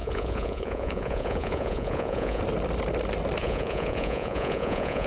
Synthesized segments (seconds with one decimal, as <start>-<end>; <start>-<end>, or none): 0.0-2.4; 3.4-5.1